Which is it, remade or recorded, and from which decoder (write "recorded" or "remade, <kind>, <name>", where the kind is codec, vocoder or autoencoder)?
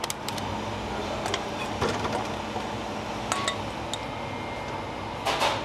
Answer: recorded